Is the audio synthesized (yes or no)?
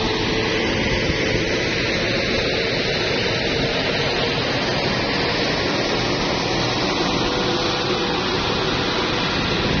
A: no